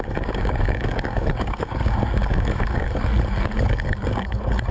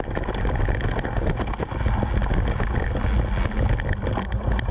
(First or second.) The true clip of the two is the second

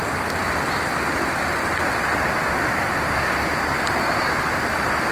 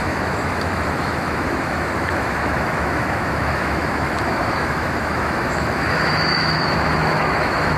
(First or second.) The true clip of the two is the first